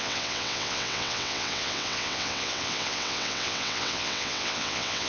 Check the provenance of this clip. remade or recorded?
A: remade